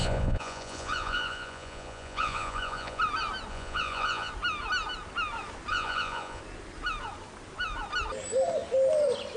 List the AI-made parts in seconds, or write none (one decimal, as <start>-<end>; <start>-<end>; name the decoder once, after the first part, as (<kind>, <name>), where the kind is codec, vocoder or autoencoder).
0.0-3.0 (vocoder, Vocos); 3.5-4.3; 5.7-6.4